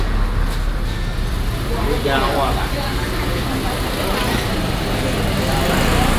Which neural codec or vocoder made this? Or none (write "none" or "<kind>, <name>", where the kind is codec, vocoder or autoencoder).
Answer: none